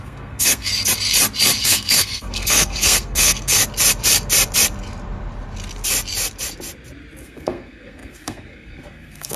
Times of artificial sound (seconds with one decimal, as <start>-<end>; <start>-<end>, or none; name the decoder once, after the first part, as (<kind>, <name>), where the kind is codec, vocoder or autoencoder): 0.0-0.7 (codec, SNAC); 1.6-3.6; 7.2-9.4